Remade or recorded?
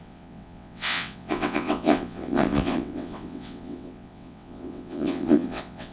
remade